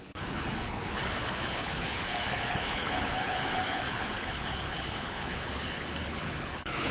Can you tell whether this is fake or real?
fake